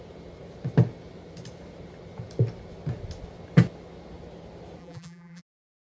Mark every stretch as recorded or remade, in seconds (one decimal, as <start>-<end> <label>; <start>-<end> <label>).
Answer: 0.0-4.8 recorded; 4.8-5.4 remade; 5.4-5.9 recorded